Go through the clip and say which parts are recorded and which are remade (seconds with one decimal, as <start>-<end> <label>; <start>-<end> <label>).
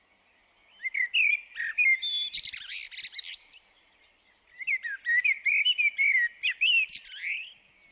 0.0-7.9 recorded